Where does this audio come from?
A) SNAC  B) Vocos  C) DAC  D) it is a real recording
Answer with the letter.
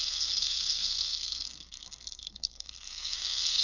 A